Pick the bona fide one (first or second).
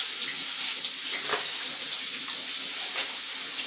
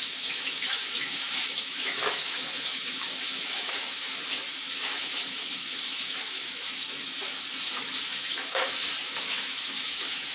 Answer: first